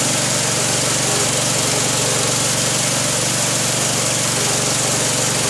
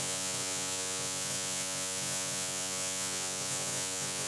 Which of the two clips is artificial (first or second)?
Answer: second